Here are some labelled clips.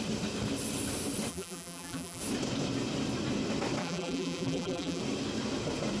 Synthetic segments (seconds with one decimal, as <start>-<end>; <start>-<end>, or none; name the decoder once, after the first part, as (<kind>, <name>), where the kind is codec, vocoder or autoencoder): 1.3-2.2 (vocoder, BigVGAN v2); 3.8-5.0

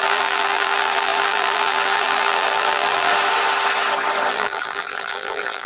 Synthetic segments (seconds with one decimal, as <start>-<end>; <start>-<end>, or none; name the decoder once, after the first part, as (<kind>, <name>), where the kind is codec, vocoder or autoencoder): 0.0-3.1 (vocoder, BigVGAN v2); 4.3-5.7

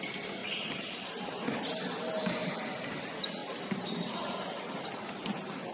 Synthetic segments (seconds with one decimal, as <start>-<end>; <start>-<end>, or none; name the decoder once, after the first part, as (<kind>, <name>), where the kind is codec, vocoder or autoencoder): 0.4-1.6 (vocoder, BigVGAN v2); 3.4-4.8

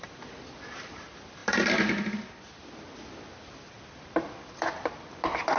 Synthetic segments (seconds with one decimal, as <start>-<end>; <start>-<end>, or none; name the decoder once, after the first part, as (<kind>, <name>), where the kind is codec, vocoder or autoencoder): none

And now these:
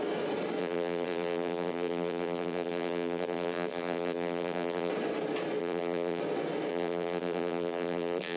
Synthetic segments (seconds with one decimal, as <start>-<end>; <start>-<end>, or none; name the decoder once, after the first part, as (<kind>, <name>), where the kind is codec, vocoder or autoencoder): 0.6-4.9 (vocoder, BigVGAN v2); 5.6-6.2; 6.7-8.4

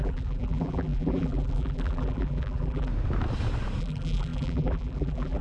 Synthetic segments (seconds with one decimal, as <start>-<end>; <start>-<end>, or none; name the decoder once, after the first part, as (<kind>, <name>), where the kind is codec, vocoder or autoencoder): 0.0-2.9 (vocoder, BigVGAN v2); 3.8-5.4

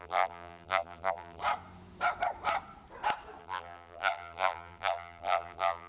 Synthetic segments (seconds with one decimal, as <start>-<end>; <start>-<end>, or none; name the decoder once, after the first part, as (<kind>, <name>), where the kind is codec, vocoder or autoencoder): 0.0-1.4 (vocoder, BigVGAN v2); 3.4-5.9

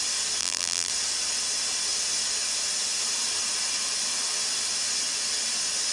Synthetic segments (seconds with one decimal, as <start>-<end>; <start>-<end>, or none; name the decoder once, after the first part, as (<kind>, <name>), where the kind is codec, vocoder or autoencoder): 0.4-0.9 (vocoder, BigVGAN v2)